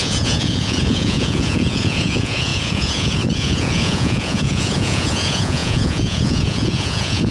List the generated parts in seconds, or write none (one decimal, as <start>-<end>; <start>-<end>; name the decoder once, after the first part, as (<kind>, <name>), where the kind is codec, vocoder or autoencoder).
0.0-7.3 (vocoder, Vocos)